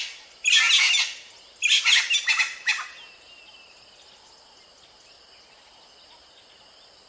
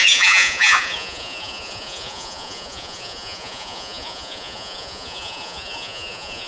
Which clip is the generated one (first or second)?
second